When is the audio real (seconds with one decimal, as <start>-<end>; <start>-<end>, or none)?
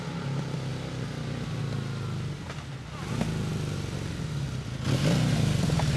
0.0-0.7; 1.6-6.0